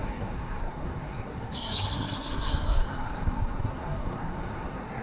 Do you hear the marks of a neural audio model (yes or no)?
yes